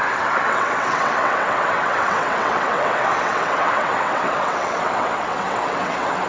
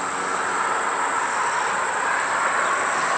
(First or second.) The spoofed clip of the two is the first